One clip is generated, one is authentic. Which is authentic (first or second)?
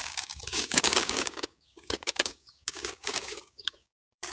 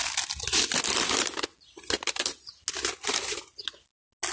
second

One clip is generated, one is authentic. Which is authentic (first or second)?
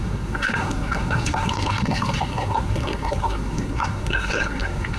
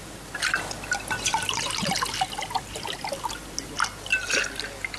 second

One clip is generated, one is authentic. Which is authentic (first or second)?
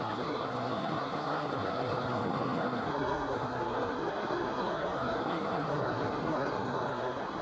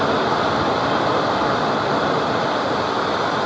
second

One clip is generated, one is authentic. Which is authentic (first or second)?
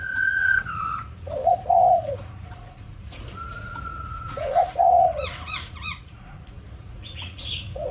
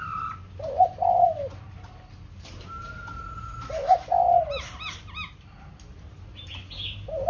second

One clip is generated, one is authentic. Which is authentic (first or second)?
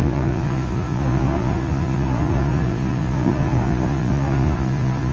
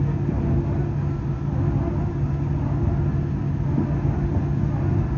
second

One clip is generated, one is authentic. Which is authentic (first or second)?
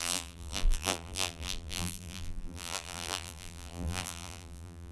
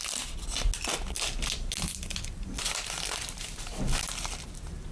second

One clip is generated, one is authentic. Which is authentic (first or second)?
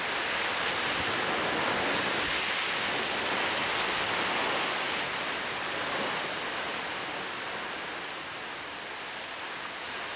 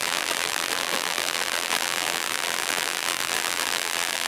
first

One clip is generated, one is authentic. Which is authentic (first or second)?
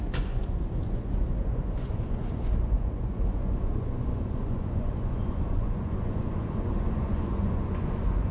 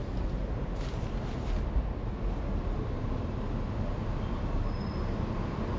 second